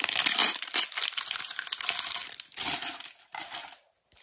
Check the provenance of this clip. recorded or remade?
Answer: recorded